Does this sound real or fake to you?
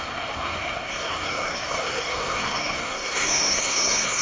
fake